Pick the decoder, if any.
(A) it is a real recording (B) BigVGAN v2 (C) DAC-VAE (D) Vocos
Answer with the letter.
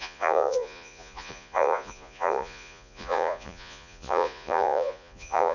D